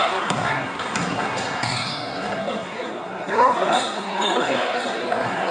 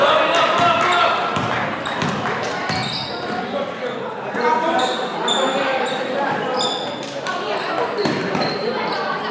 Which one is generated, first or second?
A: first